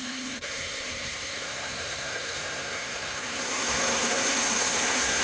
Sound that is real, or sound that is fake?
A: fake